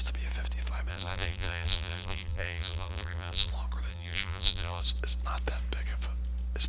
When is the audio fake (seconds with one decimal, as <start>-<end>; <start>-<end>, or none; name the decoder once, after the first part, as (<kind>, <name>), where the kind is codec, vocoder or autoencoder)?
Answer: 0.9-3.5 (vocoder, BigVGAN v2); 3.9-4.8